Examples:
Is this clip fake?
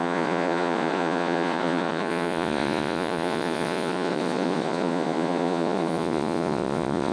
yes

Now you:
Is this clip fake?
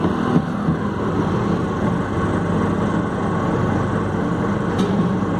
no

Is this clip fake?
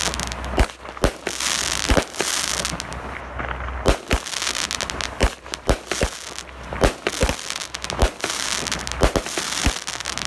no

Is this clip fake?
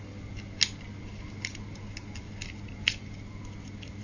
no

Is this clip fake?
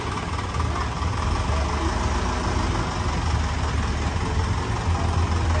no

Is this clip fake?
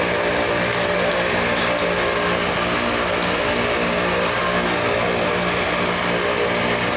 no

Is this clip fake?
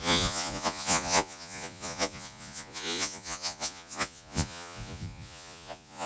yes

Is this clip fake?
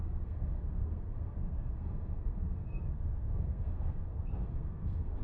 yes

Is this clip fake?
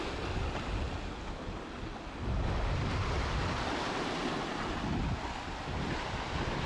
no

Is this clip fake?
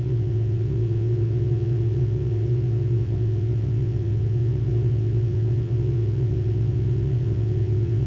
yes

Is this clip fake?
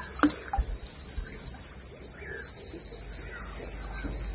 no